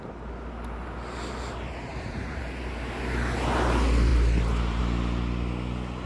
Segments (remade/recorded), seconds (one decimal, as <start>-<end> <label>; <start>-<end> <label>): 0.0-1.9 recorded; 1.9-2.4 remade; 2.4-4.1 recorded; 4.1-4.8 remade; 4.8-6.1 recorded